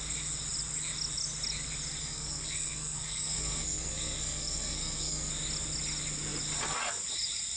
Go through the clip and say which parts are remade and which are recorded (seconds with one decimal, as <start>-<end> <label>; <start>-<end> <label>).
0.0-2.0 recorded; 2.0-5.3 remade; 5.3-7.6 recorded